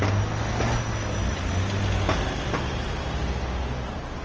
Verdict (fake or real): real